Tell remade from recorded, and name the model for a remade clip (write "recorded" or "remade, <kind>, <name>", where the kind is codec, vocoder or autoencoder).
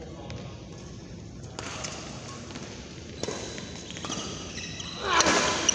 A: recorded